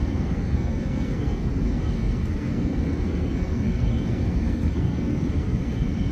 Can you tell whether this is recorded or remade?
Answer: remade